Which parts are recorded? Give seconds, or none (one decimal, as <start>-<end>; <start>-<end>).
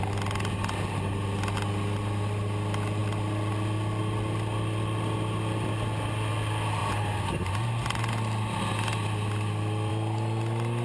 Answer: 0.0-10.8